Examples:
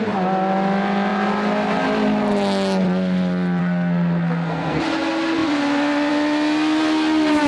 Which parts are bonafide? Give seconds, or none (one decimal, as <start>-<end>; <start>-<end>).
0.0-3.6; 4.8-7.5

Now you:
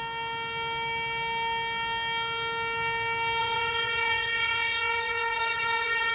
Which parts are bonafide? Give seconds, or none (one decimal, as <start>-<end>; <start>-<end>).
0.0-3.4

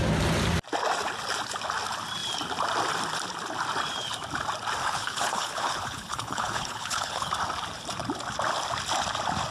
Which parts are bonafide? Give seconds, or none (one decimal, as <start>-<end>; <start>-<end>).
0.0-4.8; 7.3-9.5